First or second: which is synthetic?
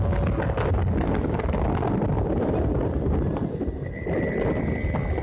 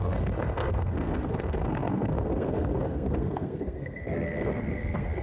second